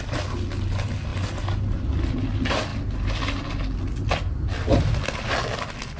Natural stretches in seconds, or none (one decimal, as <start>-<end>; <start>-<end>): 0.0-6.0